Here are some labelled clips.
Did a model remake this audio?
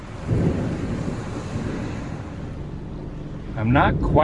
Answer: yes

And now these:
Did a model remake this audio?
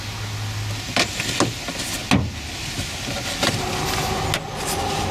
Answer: no